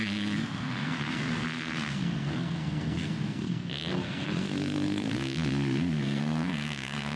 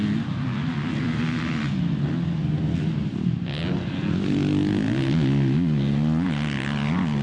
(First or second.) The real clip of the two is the second